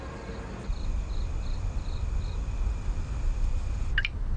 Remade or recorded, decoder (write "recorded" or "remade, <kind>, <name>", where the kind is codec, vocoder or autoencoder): recorded